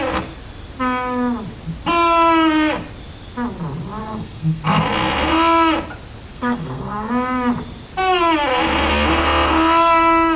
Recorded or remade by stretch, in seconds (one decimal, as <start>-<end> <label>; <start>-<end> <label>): 0.0-4.0 recorded; 4.0-4.6 remade; 4.6-6.3 recorded; 6.3-7.1 remade; 7.1-10.4 recorded